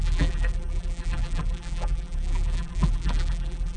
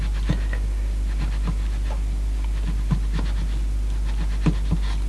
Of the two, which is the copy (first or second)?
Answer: first